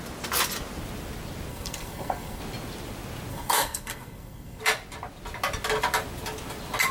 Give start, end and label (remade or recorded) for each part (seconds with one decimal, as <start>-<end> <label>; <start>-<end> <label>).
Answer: 0.0-1.5 recorded; 1.5-2.4 remade; 2.4-3.3 recorded; 3.3-4.6 remade; 4.6-6.9 recorded